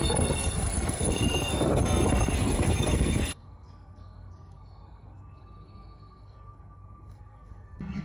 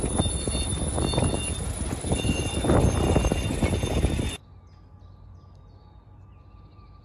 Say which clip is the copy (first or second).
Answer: first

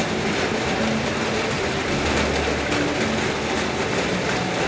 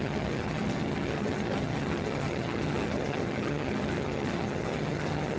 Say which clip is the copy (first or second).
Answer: second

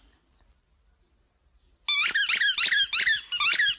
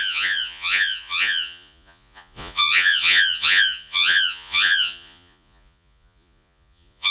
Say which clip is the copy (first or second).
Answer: second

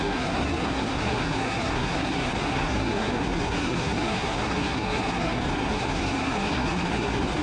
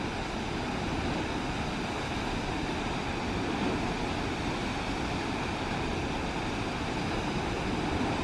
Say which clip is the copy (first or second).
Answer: first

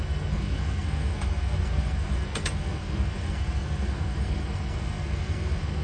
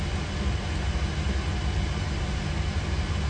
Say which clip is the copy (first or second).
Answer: first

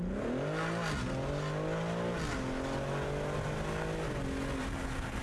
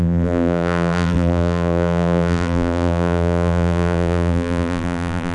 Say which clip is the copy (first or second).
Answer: second